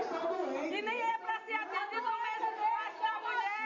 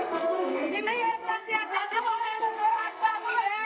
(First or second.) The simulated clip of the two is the second